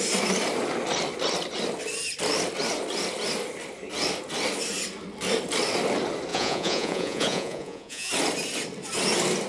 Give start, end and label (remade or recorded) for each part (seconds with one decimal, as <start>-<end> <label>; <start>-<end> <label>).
0.0-6.3 recorded; 6.3-8.1 remade; 8.1-9.5 recorded

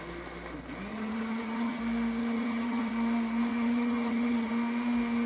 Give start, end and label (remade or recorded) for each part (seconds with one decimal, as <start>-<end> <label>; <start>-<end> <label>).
0.0-0.9 recorded; 0.9-1.8 remade; 1.8-2.2 recorded; 2.2-2.9 remade; 2.9-3.5 recorded; 3.5-4.5 remade; 4.5-5.3 recorded

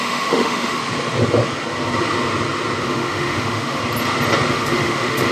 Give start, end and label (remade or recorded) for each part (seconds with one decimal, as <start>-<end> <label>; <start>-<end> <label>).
0.0-0.8 remade; 0.8-2.8 recorded; 2.8-3.8 remade; 3.8-4.5 recorded; 4.5-5.3 remade

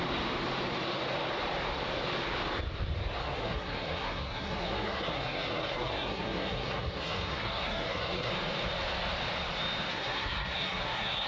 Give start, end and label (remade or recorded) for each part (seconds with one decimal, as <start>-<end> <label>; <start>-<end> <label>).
0.0-3.2 recorded; 3.2-8.3 remade; 8.3-9.9 recorded; 9.9-11.3 remade

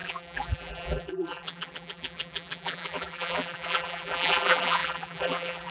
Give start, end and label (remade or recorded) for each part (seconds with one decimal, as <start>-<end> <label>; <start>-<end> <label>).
0.0-5.7 remade

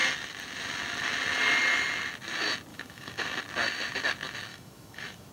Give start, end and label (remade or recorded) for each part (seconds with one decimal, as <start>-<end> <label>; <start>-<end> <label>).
0.0-2.7 recorded; 2.7-3.4 remade; 3.4-4.5 recorded; 4.5-5.3 remade

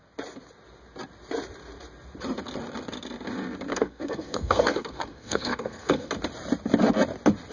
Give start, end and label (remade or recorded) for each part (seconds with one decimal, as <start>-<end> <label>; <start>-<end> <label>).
0.0-3.7 recorded; 3.7-6.1 remade; 6.1-7.5 recorded

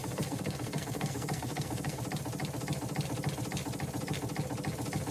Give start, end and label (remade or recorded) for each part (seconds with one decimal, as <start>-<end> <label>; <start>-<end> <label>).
0.0-2.0 remade; 2.0-5.1 recorded